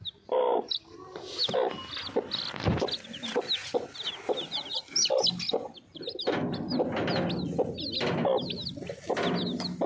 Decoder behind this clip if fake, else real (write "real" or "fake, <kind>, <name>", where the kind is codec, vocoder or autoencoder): real